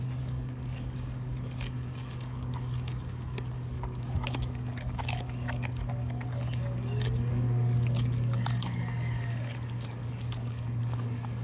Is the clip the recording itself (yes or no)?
no